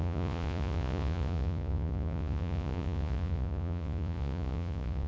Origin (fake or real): fake